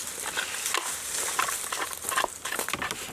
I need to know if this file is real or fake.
real